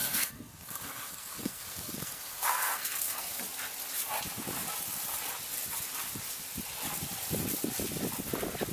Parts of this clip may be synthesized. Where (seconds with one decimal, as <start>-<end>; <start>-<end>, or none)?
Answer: 0.0-3.4